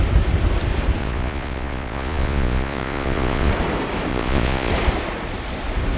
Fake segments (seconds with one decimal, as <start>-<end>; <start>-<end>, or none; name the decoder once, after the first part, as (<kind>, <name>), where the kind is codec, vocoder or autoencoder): 1.0-3.5 (vocoder, Vocos); 4.1-4.7